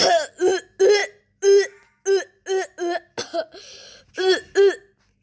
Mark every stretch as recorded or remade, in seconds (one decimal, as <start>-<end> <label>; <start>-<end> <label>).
0.0-5.2 recorded